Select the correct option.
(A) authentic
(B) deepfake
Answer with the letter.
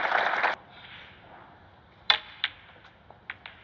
A